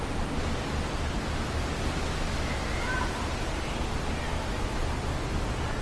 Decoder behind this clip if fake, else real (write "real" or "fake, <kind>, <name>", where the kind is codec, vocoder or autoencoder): real